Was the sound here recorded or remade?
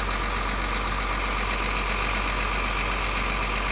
recorded